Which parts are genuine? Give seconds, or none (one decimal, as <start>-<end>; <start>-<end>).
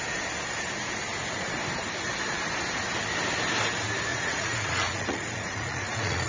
0.0-4.1